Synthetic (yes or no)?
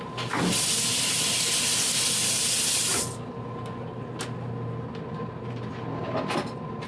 no